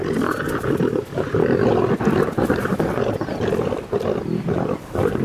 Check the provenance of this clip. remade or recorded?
recorded